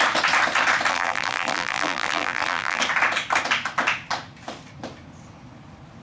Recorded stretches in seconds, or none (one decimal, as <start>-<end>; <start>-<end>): 0.0-0.9; 2.8-6.0